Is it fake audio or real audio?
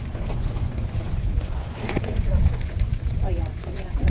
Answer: fake